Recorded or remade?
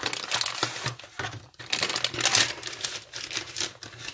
recorded